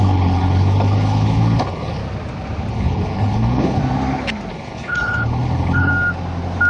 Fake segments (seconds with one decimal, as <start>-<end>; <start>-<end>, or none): 0.0-2.0; 2.7-3.8; 4.5-5.9